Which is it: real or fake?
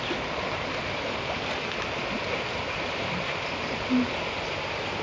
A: real